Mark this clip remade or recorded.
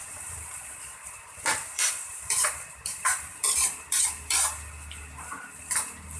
remade